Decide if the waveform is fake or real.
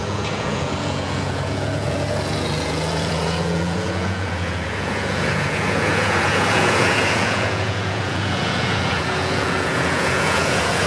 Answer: fake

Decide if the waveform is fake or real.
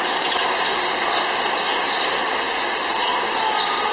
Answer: real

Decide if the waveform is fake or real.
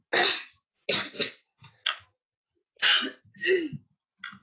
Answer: real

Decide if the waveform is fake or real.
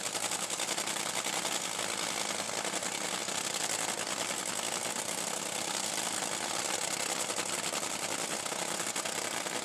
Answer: real